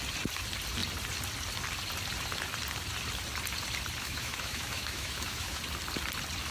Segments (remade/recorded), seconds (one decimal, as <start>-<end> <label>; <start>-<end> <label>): 0.0-4.0 recorded; 4.0-5.6 remade; 5.6-6.5 recorded